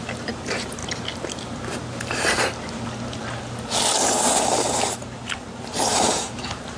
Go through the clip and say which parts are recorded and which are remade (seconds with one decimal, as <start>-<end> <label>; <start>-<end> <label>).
0.0-0.8 remade; 0.8-4.0 recorded; 4.0-6.8 remade